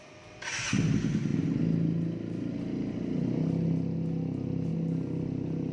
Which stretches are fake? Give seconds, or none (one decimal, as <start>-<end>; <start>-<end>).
none